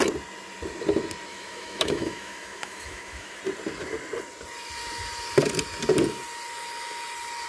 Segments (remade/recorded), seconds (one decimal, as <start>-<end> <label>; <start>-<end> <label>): 0.0-1.3 recorded; 1.3-3.4 remade; 3.4-7.5 recorded